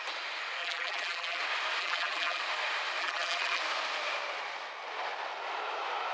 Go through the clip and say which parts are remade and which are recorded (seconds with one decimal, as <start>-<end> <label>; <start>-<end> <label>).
0.0-0.6 recorded; 0.6-1.4 remade; 1.4-1.8 recorded; 1.8-2.4 remade; 2.4-3.0 recorded; 3.0-3.6 remade; 3.6-6.1 recorded